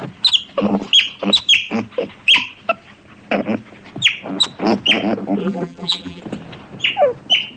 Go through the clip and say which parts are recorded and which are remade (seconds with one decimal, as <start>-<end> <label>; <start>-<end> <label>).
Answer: 0.0-5.4 recorded; 5.4-6.2 remade; 6.2-7.6 recorded